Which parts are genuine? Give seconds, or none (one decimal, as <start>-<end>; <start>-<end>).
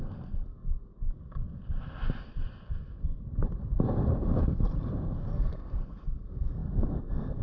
0.9-5.3